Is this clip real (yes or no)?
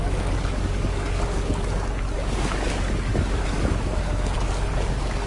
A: no